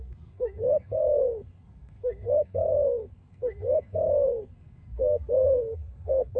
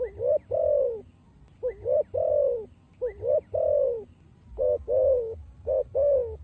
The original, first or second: second